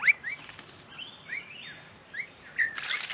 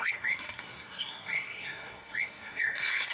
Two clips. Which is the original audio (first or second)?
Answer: first